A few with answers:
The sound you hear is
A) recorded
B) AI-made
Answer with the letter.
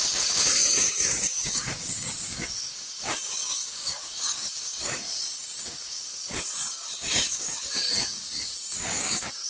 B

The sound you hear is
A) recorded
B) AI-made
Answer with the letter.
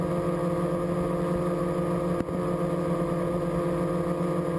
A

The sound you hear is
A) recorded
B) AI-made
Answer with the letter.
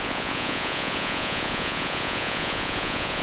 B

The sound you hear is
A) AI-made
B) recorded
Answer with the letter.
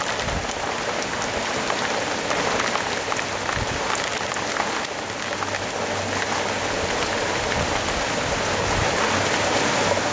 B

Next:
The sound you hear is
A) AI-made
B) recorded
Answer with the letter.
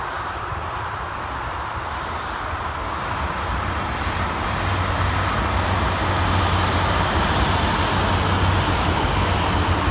B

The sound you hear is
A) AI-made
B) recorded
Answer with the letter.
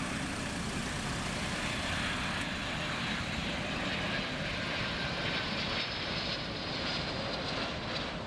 A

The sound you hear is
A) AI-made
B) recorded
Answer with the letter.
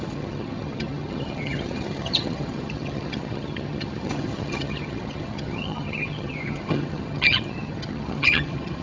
A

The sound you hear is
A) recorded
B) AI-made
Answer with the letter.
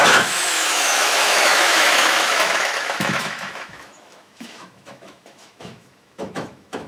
B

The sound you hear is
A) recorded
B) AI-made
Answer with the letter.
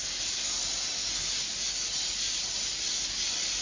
A